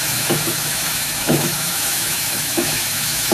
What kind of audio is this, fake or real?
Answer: fake